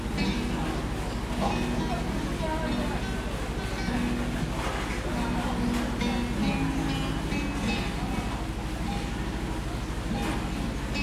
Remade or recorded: recorded